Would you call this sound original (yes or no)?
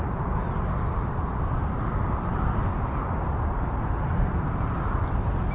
yes